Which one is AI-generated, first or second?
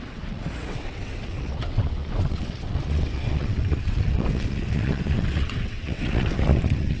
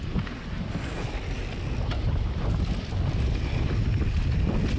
first